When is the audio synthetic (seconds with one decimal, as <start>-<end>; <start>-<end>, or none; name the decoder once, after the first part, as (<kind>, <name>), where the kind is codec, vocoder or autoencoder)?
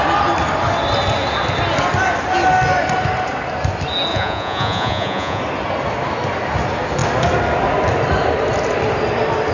4.1-5.4 (vocoder, Vocos)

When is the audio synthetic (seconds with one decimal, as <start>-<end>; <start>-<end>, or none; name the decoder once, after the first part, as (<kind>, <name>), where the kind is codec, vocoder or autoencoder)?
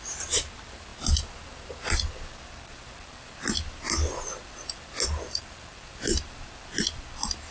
none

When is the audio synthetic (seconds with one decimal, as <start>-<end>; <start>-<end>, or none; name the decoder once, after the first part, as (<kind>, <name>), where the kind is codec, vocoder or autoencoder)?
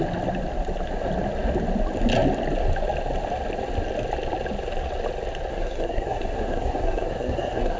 5.5-7.8 (codec, SNAC)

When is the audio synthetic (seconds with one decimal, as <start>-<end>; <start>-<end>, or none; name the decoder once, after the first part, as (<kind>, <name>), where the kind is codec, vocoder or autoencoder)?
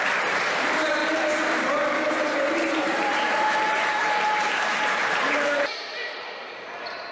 0.0-1.0 (vocoder, BigVGAN v2); 2.2-7.1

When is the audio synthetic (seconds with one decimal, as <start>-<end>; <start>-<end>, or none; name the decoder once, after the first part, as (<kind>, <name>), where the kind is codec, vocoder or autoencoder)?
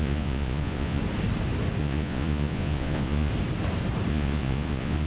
0.0-1.0 (vocoder, Vocos); 1.8-3.3; 4.1-5.1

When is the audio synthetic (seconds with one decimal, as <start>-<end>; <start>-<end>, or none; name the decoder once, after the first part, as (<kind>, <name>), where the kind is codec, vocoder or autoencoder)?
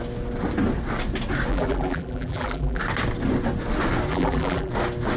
1.5-2.8 (vocoder, BigVGAN v2); 4.1-4.7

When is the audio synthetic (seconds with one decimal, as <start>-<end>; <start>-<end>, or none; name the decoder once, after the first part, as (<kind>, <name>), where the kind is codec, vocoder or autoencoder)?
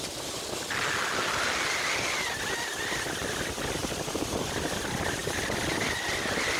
3.8-4.8 (vocoder, BigVGAN v2); 5.2-5.9